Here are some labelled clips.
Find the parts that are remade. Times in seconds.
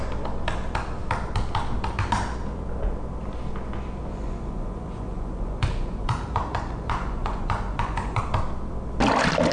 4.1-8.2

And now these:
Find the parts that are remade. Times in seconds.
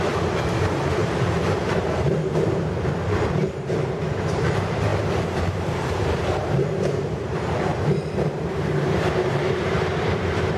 0.0-10.6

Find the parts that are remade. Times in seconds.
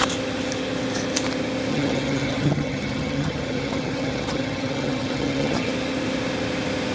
1.7-5.7